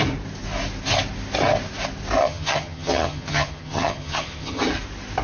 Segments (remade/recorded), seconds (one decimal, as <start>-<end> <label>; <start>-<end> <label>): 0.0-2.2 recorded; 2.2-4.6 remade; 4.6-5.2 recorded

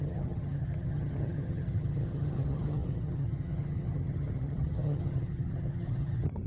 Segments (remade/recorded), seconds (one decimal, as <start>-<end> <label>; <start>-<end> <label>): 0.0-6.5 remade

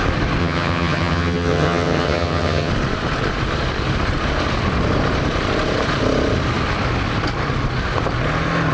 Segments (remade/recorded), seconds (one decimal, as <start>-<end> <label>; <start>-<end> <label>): 0.0-0.4 recorded; 0.4-2.7 remade; 2.7-8.7 recorded